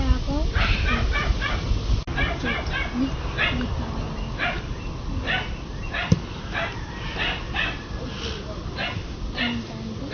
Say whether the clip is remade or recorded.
recorded